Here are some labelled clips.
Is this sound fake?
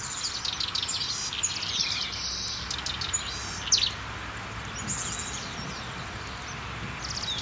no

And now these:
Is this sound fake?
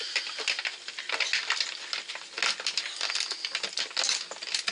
no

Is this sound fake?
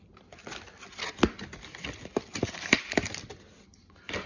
no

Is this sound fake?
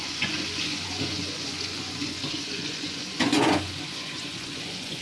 yes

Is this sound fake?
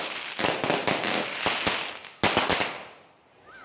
no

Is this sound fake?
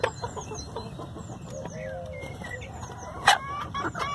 no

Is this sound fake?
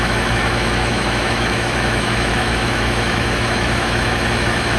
yes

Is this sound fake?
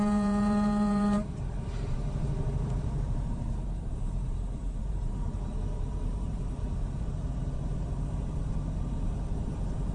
yes